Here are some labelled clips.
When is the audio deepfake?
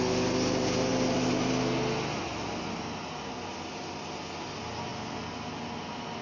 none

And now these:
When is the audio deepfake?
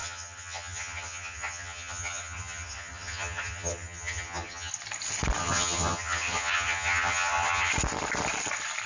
0.0-4.7; 5.4-7.7